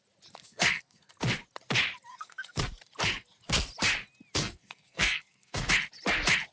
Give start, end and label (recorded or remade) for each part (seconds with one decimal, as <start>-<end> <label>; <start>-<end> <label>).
0.0-0.4 recorded; 0.4-1.2 remade; 1.2-2.1 recorded; 2.1-2.6 remade; 2.6-4.4 recorded; 4.4-5.7 remade; 5.7-6.5 recorded